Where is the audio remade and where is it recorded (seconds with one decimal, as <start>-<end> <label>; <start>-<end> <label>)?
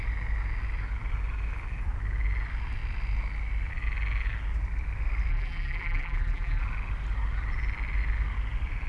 0.0-5.3 recorded; 5.3-6.6 remade; 6.6-8.9 recorded